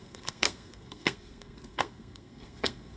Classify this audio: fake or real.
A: fake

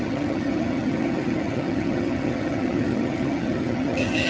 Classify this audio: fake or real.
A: fake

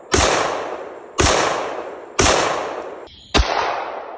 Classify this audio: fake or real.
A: real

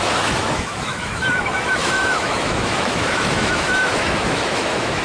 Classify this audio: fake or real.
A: fake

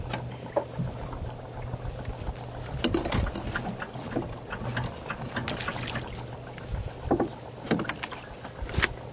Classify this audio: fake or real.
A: real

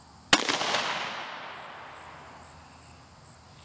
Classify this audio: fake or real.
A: real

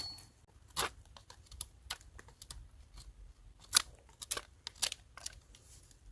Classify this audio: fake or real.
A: real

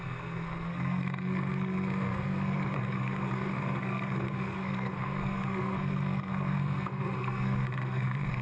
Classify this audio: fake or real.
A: fake